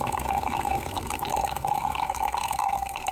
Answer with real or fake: fake